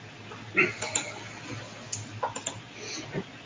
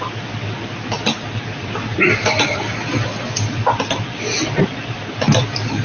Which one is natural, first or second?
first